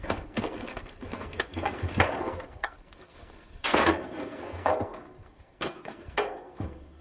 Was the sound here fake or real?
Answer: fake